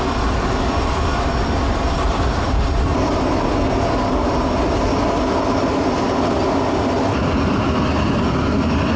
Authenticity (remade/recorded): recorded